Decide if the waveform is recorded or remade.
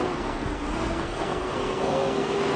remade